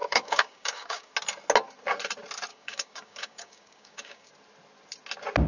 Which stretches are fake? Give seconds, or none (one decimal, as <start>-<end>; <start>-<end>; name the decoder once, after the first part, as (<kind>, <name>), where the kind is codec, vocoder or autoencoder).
0.0-1.1 (codec, DAC); 2.5-4.3